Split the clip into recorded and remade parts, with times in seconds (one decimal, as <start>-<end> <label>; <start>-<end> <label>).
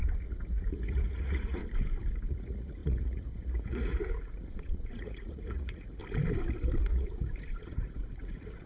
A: 0.0-1.6 remade; 1.6-2.3 recorded; 2.3-6.0 remade; 6.0-6.8 recorded; 6.8-8.7 remade